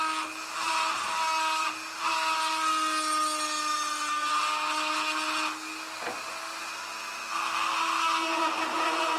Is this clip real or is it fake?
real